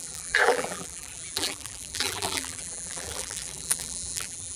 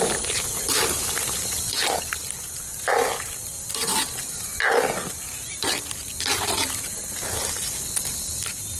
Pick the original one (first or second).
second